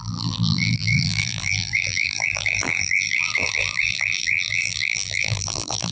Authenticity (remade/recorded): remade